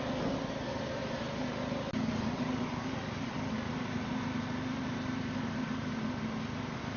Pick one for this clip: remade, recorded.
recorded